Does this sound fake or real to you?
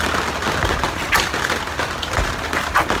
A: real